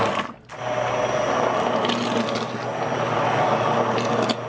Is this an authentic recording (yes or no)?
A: yes